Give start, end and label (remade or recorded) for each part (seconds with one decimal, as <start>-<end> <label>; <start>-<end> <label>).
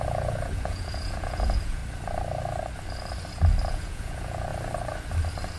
0.0-1.8 remade; 1.8-3.7 recorded; 3.7-4.5 remade; 4.5-5.6 recorded